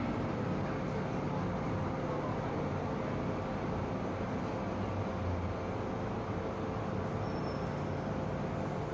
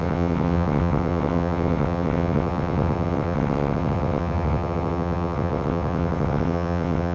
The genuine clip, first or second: first